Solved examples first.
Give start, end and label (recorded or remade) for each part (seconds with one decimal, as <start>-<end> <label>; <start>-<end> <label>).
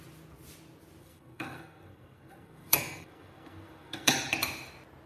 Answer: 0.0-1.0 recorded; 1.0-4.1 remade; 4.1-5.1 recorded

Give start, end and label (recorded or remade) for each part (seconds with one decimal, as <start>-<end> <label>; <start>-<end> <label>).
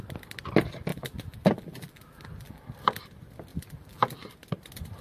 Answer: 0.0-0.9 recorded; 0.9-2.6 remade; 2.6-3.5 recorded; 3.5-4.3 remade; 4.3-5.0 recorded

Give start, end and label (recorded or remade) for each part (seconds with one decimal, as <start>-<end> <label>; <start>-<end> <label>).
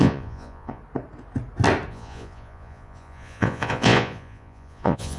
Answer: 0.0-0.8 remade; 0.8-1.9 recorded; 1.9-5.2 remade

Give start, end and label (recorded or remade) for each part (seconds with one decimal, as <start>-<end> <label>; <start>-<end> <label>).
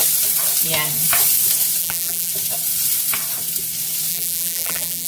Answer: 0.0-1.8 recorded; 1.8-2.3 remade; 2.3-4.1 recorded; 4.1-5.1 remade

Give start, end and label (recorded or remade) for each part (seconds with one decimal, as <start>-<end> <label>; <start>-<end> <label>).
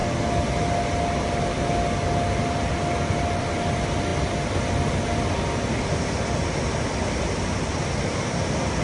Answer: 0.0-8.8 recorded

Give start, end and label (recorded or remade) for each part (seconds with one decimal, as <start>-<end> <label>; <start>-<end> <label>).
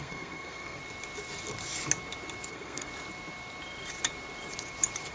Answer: 0.0-0.8 remade; 0.8-2.5 recorded; 2.5-2.9 remade; 2.9-5.1 recorded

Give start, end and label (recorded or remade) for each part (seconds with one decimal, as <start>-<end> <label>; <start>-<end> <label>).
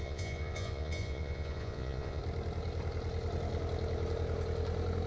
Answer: 0.0-2.2 remade; 2.2-5.1 recorded